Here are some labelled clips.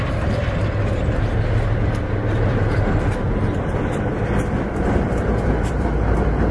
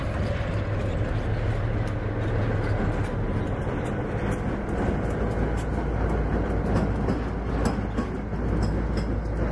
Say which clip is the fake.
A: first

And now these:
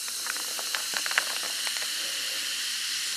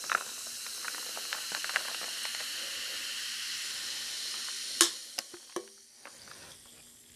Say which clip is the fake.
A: first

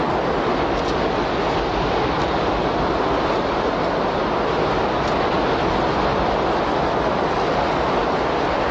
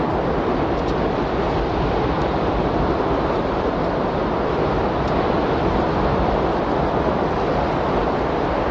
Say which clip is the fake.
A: second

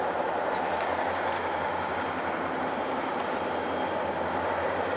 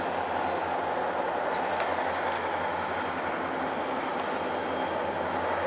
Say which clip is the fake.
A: first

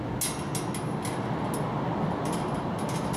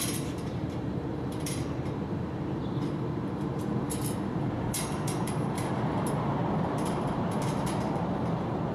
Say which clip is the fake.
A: second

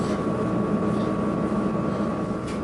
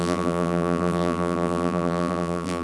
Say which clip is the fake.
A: second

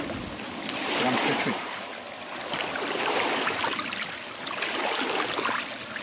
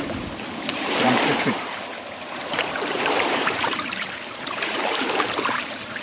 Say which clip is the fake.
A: second